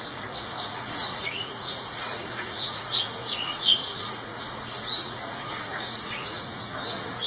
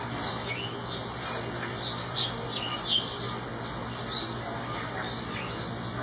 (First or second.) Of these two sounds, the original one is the second